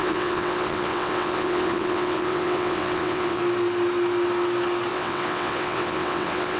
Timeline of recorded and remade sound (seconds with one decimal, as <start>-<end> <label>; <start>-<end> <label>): 0.0-3.4 remade; 3.4-4.9 recorded; 4.9-6.6 remade

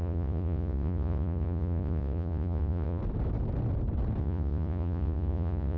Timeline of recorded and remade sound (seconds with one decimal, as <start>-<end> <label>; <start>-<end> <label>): 0.0-3.0 remade; 3.0-4.2 recorded; 4.2-5.8 remade

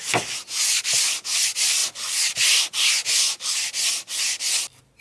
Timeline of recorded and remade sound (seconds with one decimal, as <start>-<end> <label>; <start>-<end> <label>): 0.0-5.0 recorded

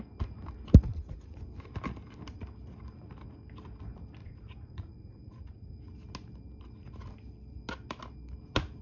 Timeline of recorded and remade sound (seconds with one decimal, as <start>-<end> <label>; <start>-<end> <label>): 0.0-0.9 recorded; 0.9-1.4 remade; 1.4-4.2 recorded; 4.2-5.7 remade; 5.7-8.8 recorded

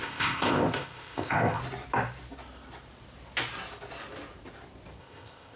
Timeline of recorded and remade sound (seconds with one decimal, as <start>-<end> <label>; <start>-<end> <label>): 0.0-1.6 remade; 1.6-5.0 recorded; 5.0-5.6 remade